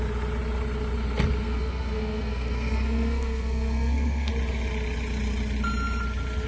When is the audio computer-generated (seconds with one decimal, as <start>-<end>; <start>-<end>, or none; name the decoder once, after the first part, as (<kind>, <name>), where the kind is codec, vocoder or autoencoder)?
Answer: 1.4-4.3 (codec, SNAC)